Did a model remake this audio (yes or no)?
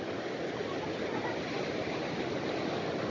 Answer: no